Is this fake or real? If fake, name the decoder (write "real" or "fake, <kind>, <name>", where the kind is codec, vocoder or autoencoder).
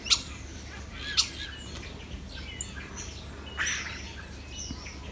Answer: real